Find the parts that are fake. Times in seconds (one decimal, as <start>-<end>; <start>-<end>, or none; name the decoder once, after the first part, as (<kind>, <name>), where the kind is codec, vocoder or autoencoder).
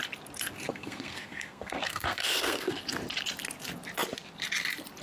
0.7-2.8 (codec, SNAC)